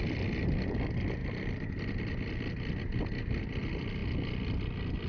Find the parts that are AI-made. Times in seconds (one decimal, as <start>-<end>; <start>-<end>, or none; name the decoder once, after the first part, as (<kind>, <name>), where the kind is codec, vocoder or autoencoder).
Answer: none